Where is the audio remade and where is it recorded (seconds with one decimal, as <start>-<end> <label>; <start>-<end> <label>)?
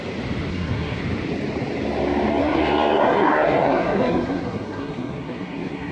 0.0-0.5 recorded; 0.5-1.0 remade; 1.0-2.3 recorded; 2.3-5.9 remade